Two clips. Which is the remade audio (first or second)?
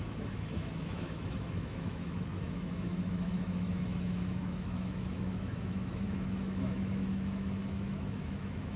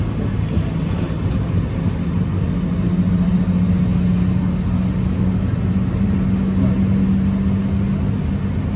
first